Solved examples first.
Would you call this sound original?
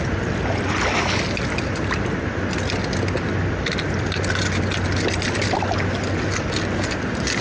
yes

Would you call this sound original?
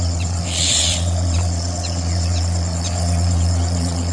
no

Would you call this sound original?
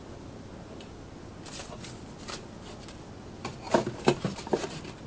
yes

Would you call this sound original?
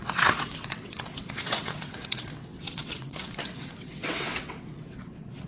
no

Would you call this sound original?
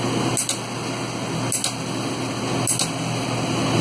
yes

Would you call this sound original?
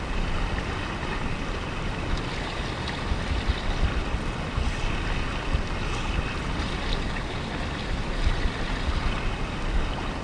yes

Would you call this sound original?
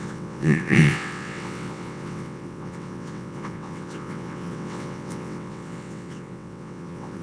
no